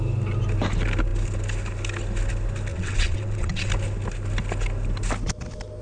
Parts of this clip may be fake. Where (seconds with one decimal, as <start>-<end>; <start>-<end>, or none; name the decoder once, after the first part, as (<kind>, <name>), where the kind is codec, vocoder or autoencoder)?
2.7-3.7 (vocoder, WaveNeXt)

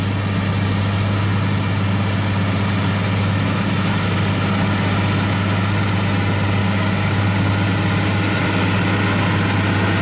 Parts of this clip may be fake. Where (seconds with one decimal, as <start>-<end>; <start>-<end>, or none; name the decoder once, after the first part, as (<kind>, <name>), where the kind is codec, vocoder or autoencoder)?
6.6-7.5 (codec, DAC)